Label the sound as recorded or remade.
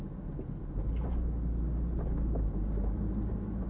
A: recorded